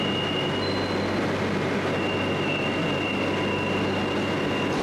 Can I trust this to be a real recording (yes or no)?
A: yes